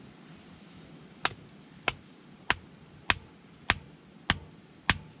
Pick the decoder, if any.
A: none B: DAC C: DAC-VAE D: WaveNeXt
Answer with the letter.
A